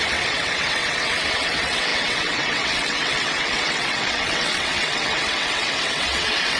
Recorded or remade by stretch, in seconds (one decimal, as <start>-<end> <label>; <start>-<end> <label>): 0.0-6.6 remade